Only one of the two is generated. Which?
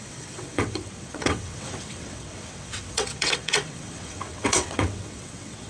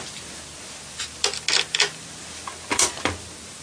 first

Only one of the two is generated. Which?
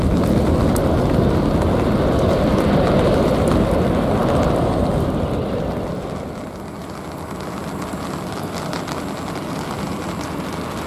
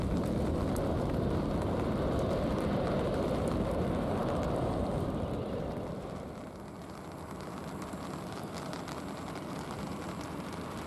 second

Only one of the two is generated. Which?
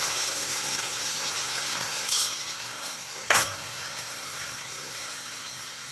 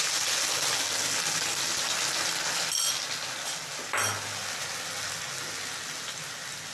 first